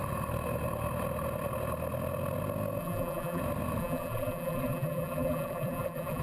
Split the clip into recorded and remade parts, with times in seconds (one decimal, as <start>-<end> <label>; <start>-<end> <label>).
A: 0.0-2.8 recorded; 2.8-3.4 remade; 3.4-3.8 recorded; 3.8-6.2 remade